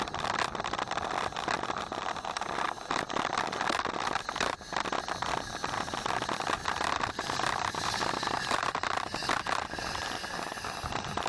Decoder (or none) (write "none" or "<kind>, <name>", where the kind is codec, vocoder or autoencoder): none